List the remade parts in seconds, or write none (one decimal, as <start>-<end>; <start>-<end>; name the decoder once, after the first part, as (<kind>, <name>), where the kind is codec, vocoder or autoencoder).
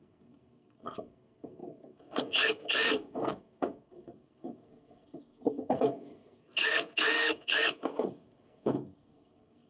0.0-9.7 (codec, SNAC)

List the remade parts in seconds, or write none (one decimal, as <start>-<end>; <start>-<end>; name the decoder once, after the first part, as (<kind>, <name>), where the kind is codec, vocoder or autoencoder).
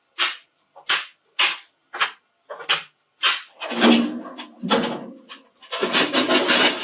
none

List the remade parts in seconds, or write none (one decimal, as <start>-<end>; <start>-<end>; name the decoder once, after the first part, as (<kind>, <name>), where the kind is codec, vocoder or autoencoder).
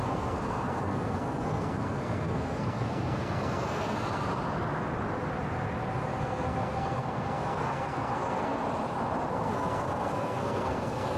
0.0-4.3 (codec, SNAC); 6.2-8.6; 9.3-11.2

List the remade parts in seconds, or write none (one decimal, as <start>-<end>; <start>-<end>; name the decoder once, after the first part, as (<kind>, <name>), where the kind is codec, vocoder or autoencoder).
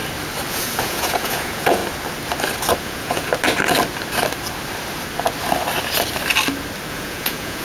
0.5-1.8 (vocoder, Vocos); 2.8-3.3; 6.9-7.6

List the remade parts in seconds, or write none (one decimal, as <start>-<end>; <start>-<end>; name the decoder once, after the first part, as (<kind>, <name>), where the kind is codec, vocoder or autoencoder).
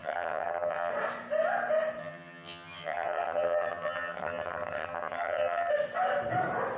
0.0-0.9 (vocoder, HiFi-GAN); 2.0-5.7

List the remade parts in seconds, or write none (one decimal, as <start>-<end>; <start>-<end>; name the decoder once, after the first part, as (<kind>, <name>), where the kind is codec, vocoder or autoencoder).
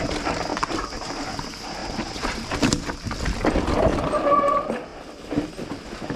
0.5-1.1 (vocoder, BigVGAN v2); 1.8-2.6; 3.9-4.5